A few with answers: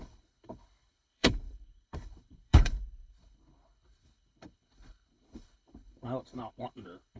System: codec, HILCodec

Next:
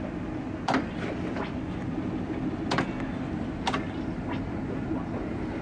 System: none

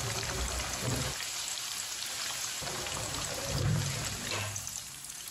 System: vocoder, BigVGAN v2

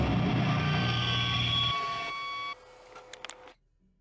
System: none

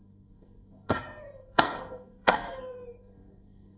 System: codec, SNAC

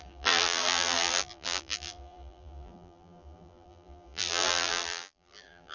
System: vocoder, BigVGAN v2